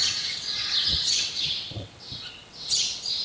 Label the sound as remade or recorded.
remade